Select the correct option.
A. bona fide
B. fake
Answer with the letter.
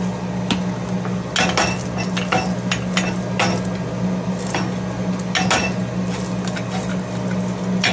A